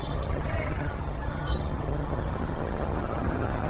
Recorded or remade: remade